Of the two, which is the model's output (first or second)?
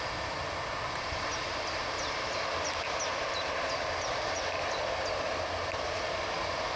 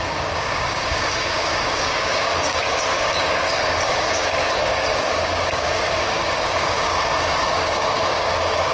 second